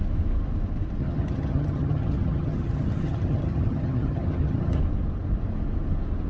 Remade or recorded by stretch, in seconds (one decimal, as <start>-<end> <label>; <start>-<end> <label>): 0.0-1.0 recorded; 1.0-4.8 remade; 4.8-6.3 recorded